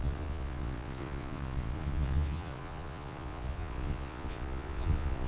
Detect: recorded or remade remade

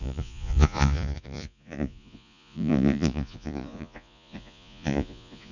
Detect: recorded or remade remade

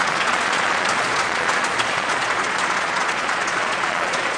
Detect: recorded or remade remade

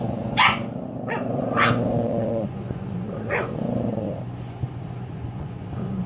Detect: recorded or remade remade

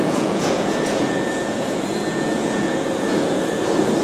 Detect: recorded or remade remade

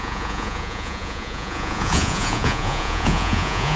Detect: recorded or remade remade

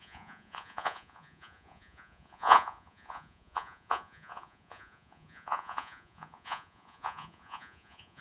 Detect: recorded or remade remade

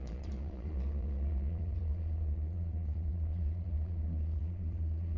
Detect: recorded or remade remade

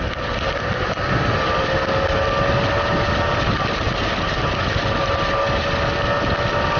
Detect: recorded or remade recorded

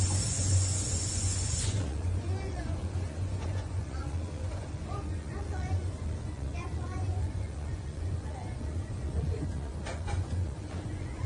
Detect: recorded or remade remade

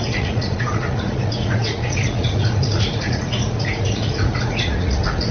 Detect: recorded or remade remade